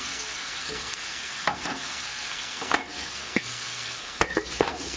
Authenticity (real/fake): fake